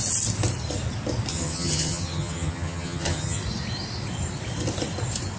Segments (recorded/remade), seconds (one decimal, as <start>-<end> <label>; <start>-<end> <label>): 0.0-1.3 recorded; 1.3-3.4 remade; 3.4-5.4 recorded